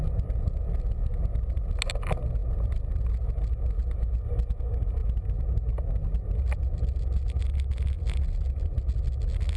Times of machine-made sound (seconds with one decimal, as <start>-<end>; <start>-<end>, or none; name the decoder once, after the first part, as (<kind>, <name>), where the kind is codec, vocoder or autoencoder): none